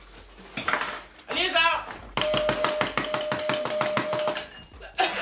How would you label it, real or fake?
real